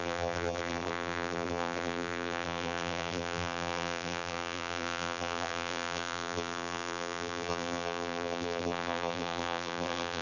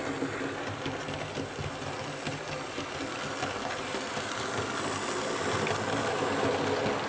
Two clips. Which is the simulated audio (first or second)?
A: first